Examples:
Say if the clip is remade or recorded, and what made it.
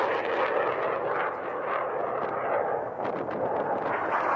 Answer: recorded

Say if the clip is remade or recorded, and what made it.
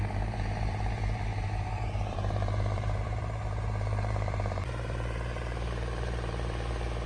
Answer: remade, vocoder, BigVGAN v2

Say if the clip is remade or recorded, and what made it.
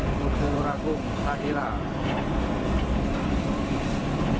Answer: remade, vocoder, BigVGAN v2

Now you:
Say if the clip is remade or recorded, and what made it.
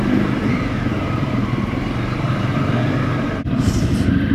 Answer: recorded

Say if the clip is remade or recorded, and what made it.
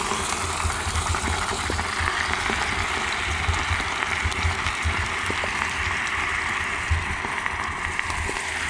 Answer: recorded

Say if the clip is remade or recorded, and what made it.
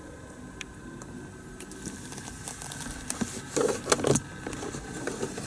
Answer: recorded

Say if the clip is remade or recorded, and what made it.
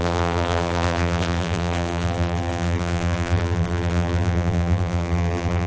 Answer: remade, vocoder, BigVGAN v2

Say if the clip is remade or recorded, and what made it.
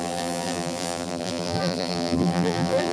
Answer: remade, vocoder, BigVGAN v2